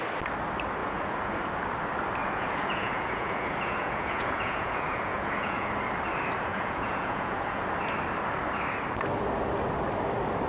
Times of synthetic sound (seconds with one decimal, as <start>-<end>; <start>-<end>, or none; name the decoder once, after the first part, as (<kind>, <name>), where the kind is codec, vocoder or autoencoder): 0.8-1.4 (vocoder, Vocos); 2.2-5.7; 6.5-7.6